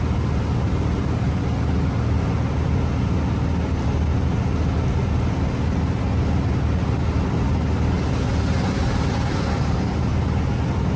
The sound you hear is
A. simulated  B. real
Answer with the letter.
B